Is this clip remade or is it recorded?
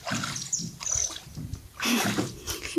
recorded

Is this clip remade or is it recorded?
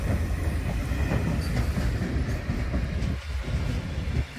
recorded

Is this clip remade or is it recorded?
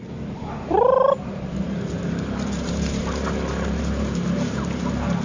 recorded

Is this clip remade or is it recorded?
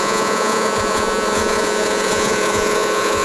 remade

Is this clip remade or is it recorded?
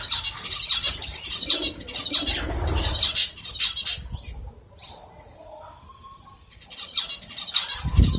recorded